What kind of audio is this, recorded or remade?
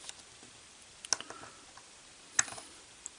recorded